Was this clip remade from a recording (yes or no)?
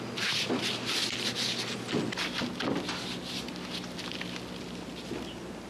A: no